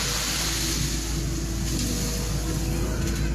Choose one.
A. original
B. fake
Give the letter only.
A